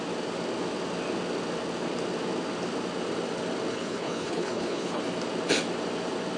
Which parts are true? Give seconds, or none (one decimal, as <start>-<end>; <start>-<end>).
0.0-3.7; 5.0-6.4